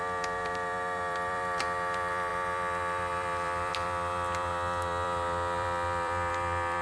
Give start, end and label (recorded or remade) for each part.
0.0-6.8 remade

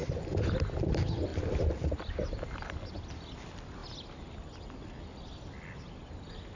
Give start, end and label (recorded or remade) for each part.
0.0-0.5 remade; 0.5-6.6 recorded

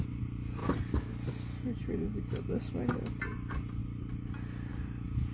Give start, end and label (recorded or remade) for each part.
0.0-5.3 recorded